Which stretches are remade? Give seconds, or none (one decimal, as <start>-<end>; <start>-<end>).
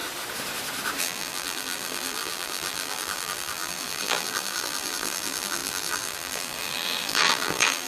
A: 1.0-7.9